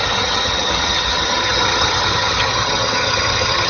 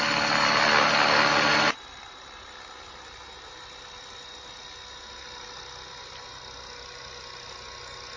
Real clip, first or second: second